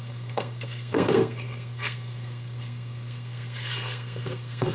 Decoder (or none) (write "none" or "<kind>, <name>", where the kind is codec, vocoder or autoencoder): codec, SNAC